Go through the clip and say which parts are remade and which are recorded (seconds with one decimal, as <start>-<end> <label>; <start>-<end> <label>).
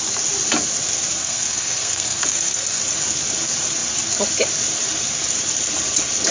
0.0-1.2 recorded; 1.2-2.8 remade; 2.8-6.3 recorded